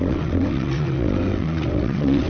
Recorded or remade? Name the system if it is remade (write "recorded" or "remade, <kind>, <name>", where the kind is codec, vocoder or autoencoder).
remade, vocoder, WaveNeXt